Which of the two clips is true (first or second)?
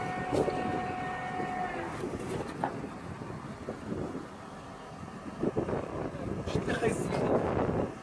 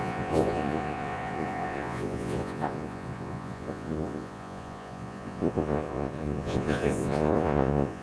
first